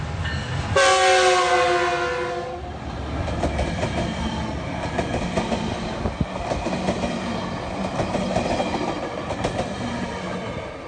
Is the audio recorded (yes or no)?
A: yes